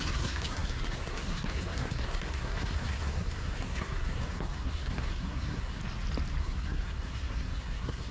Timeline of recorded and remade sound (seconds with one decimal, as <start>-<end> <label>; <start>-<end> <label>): 0.0-5.8 remade; 5.8-6.4 recorded; 6.4-8.1 remade